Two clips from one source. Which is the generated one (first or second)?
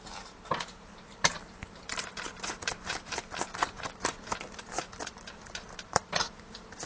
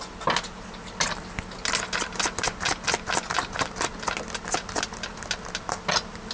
first